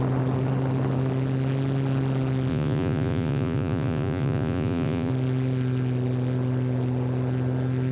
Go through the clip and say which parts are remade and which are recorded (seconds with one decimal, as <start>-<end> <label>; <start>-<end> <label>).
0.0-2.5 recorded; 2.5-5.1 remade; 5.1-7.9 recorded